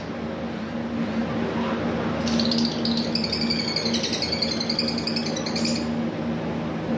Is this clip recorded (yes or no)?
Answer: yes